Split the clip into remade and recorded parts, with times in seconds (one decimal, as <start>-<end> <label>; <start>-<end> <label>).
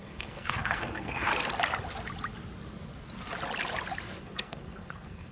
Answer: 0.0-1.3 remade; 1.3-4.2 recorded; 4.2-5.3 remade